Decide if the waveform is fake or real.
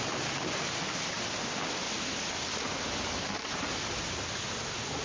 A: real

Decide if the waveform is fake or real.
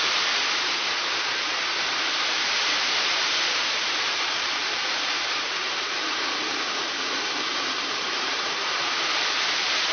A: fake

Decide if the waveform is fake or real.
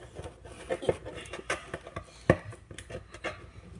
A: real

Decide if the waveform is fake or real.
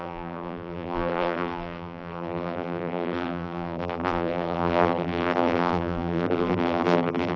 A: fake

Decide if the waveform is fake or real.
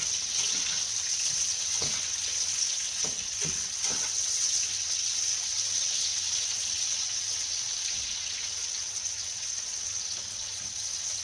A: fake